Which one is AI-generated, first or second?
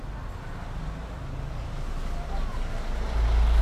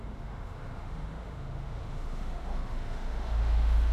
second